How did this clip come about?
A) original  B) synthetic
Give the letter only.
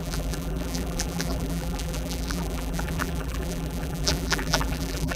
B